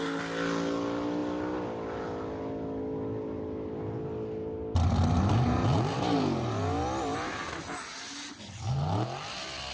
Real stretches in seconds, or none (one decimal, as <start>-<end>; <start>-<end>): 0.0-9.7